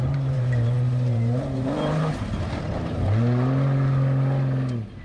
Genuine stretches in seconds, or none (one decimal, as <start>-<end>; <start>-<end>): 3.0-5.0